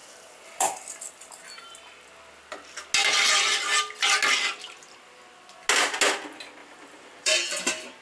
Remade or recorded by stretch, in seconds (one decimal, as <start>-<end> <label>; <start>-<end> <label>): 0.0-1.4 remade; 1.4-6.6 recorded; 6.6-7.6 remade; 7.6-8.0 recorded